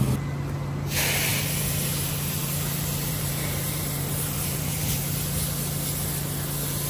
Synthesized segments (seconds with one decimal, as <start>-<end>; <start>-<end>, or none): 1.3-5.0